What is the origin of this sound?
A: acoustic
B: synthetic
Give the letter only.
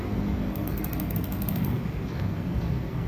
B